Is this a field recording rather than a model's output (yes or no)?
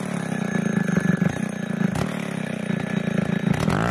yes